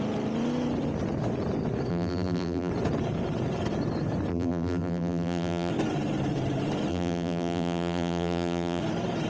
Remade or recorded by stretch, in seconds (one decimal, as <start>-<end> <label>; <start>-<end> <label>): 0.0-1.9 recorded; 1.9-2.7 remade; 2.7-4.3 recorded; 4.3-5.7 remade; 5.7-6.9 recorded; 6.9-8.8 remade; 8.8-9.3 recorded